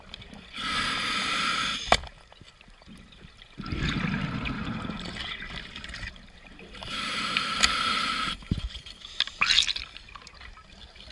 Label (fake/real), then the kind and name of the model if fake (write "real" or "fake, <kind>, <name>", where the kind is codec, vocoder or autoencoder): real